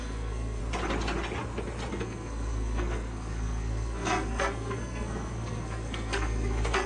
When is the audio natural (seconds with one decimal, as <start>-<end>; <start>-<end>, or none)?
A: 0.6-1.9